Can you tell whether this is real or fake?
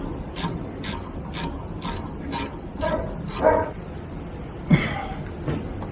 real